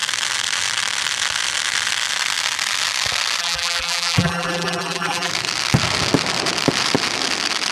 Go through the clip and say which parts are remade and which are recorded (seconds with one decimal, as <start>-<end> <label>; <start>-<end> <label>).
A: 0.0-3.4 recorded; 3.4-5.3 remade; 5.3-7.7 recorded